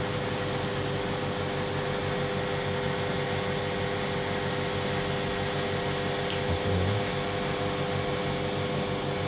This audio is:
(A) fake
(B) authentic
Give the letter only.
B